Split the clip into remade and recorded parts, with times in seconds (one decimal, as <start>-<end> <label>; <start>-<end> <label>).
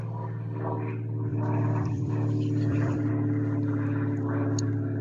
0.0-1.3 recorded; 1.3-3.1 remade; 3.1-5.0 recorded